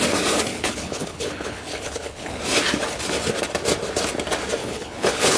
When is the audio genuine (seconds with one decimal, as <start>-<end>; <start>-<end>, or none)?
0.0-0.5; 2.4-4.6